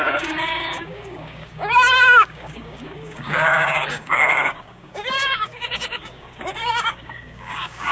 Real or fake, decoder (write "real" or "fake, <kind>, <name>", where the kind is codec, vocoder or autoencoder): fake, codec, DAC